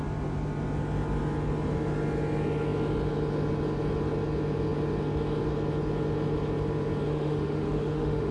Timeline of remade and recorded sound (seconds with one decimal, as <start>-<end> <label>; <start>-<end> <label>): 0.0-7.1 recorded; 7.1-8.3 remade